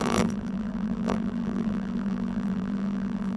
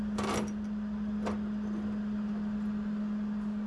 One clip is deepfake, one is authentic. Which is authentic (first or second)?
second